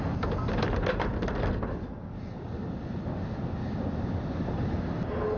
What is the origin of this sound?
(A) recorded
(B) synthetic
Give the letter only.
A